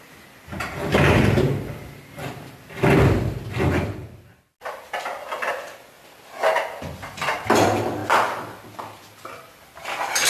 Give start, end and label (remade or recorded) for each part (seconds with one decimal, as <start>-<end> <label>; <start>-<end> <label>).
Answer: 0.0-10.3 recorded